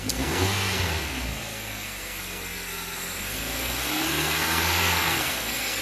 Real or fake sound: fake